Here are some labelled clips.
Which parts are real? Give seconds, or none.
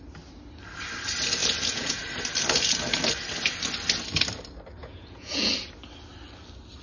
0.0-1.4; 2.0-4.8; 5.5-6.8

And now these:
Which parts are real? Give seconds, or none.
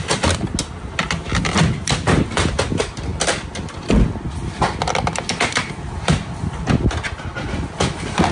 0.0-8.3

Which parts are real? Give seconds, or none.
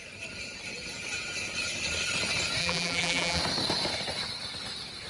0.0-2.6; 3.4-5.1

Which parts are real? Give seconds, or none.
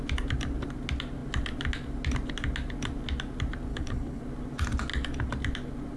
0.0-3.7; 4.2-6.0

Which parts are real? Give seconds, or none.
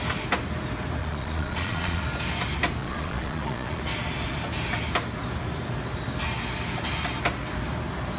0.0-1.0; 2.0-2.8; 3.8-8.2